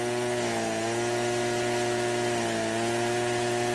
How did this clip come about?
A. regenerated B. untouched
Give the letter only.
B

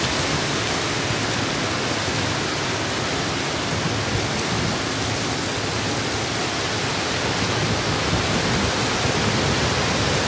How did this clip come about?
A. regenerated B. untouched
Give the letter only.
B